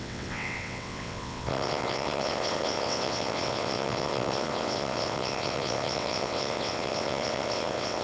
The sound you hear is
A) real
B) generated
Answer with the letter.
B